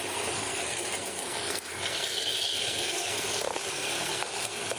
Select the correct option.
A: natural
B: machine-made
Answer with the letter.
B